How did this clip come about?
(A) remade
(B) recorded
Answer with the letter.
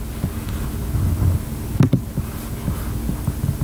B